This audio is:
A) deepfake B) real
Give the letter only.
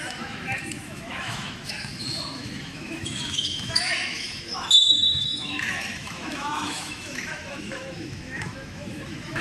A